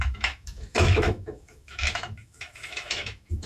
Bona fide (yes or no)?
no